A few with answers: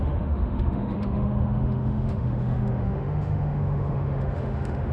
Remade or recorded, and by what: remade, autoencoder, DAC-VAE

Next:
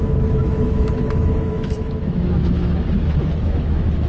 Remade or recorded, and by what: remade, autoencoder, DAC-VAE